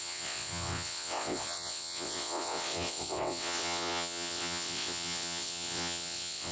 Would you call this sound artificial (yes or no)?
yes